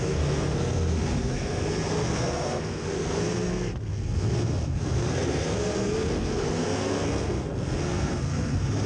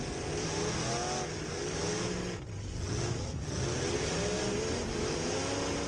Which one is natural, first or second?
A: second